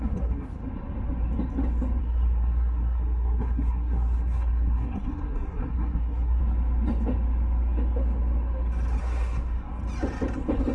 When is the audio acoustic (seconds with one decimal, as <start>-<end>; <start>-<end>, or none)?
0.6-2.0; 6.4-9.0; 9.7-10.7